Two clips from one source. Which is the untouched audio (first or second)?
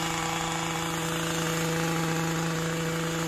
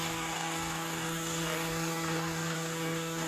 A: first